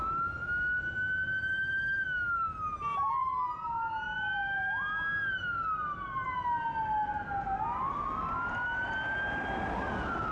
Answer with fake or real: real